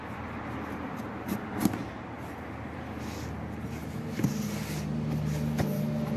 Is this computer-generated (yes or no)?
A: no